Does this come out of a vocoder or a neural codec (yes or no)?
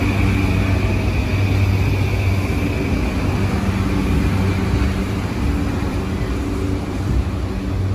no